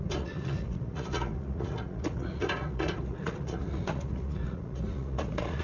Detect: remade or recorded remade